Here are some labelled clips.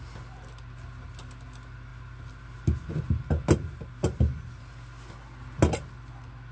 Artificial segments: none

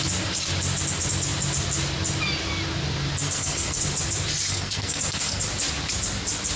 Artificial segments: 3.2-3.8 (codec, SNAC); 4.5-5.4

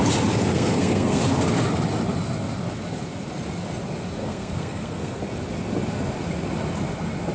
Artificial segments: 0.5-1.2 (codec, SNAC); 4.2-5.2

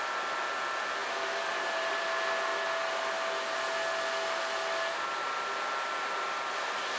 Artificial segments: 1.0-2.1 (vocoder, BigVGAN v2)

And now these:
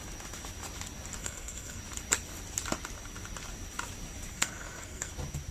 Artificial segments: 1.2-1.8 (codec, SNAC); 4.3-5.1

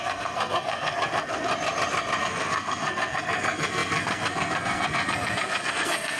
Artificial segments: 0.0-1.5 (codec, SNAC); 2.2-6.2

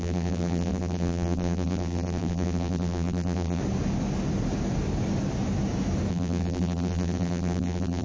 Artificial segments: 0.0-3.6 (vocoder, BigVGAN v2); 6.1-8.0

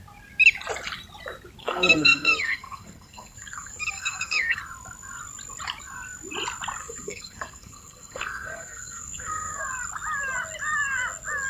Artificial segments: 1.6-4.6 (codec, SNAC); 6.8-9.6